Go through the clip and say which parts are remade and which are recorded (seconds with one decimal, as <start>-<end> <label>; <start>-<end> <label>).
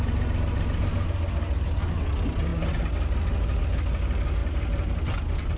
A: 0.0-5.6 recorded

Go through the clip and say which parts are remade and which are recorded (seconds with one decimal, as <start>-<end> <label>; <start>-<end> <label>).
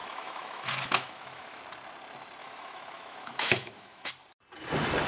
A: 0.0-1.6 remade; 1.6-2.4 recorded; 2.4-4.1 remade; 4.1-5.1 recorded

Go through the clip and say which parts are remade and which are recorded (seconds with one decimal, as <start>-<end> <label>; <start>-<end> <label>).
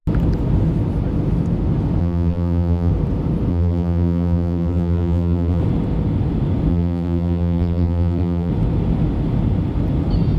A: 0.0-2.0 recorded; 2.0-2.9 remade; 2.9-3.5 recorded; 3.5-5.6 remade; 5.6-6.7 recorded; 6.7-8.5 remade; 8.5-10.4 recorded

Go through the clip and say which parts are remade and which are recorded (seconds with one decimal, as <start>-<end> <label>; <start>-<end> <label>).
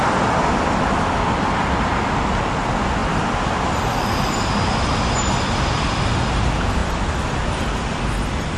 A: 0.0-3.0 recorded; 3.0-5.8 remade; 5.8-6.8 recorded; 6.8-8.6 remade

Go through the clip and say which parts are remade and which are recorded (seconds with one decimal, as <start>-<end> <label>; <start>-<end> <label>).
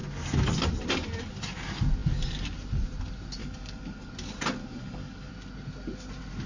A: 0.0-3.4 recorded; 3.4-4.1 remade; 4.1-4.6 recorded; 4.6-5.3 remade; 5.3-6.5 recorded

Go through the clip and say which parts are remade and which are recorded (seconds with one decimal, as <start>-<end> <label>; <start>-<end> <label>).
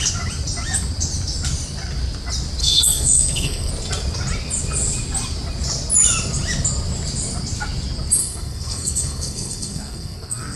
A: 0.0-2.6 recorded; 2.6-3.7 remade; 3.7-8.2 recorded; 8.2-10.6 remade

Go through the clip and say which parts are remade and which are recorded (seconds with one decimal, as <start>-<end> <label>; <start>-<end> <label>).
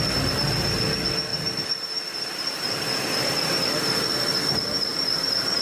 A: 0.0-1.3 recorded; 1.3-4.4 remade; 4.4-5.6 recorded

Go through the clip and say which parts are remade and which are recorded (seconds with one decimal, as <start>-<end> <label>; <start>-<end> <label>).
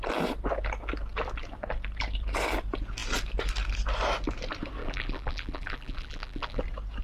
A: 0.0-4.8 recorded; 4.8-6.6 remade; 6.6-7.0 recorded